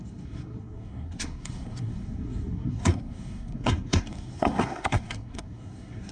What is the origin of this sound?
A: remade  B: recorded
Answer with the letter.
A